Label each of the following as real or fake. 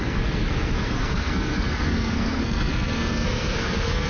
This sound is fake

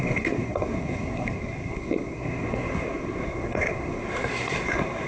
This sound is fake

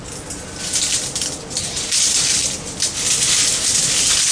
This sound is real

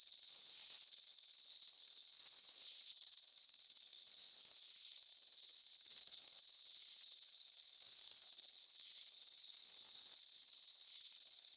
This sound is fake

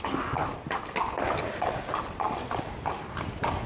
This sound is real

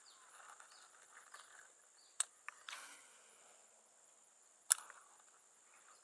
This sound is real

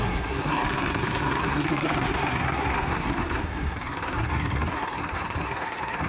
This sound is fake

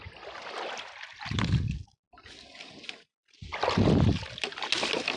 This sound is real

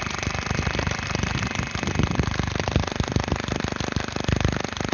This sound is real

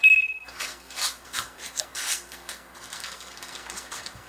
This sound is fake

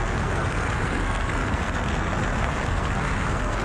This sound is fake